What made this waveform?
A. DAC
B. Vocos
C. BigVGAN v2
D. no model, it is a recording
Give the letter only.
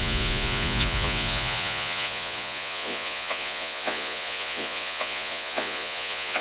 B